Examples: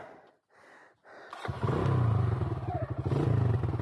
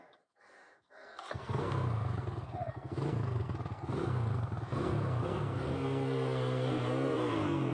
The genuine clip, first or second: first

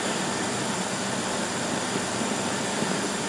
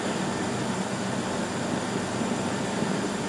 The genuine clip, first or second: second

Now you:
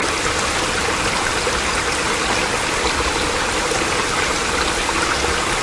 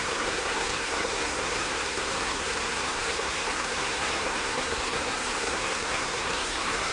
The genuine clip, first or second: first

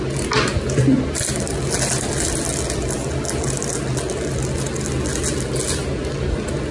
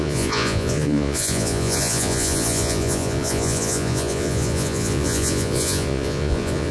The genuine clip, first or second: first